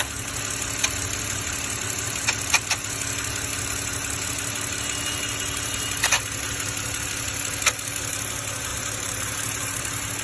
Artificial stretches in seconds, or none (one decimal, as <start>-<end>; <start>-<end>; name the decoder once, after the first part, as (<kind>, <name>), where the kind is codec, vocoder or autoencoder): 8.7-9.7 (vocoder, BigVGAN v2)